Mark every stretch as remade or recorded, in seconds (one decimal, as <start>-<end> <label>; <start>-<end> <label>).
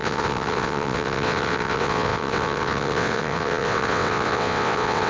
0.0-5.1 remade